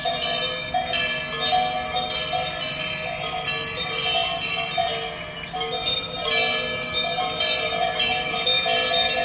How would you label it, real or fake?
real